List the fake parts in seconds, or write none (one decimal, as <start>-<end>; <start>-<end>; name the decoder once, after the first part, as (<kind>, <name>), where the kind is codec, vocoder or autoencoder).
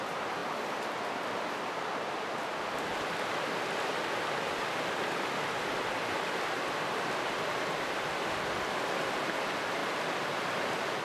none